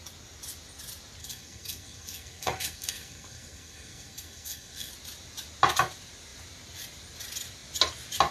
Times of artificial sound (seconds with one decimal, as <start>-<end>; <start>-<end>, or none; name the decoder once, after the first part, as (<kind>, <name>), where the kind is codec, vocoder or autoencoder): 1.2-4.9 (codec, SNAC)